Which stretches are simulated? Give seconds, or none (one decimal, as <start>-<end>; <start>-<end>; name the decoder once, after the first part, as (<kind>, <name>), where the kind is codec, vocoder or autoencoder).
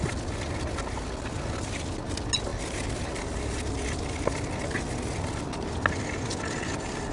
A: none